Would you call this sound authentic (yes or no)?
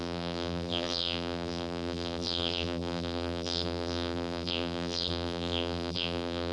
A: no